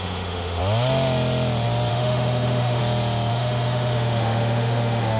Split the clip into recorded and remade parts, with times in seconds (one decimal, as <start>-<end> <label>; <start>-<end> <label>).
0.0-0.6 remade; 0.6-1.9 recorded; 1.9-2.8 remade; 2.8-3.3 recorded; 3.3-5.2 remade